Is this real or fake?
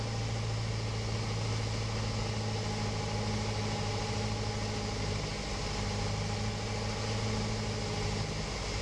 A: real